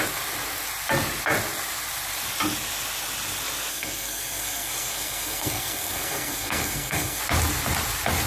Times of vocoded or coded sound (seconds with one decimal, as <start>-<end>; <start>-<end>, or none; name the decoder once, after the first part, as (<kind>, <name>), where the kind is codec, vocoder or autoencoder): 3.7-7.2 (codec, SNAC)